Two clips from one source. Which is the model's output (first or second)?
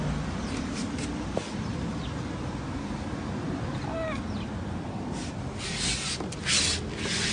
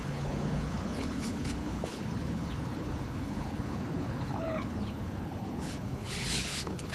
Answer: second